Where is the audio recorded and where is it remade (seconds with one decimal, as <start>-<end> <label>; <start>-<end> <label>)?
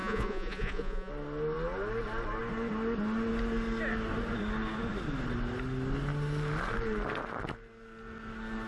0.0-1.1 remade; 1.1-8.7 recorded